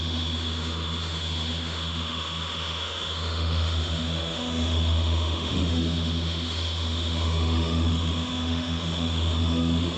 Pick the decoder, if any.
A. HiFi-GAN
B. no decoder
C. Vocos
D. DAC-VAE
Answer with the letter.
D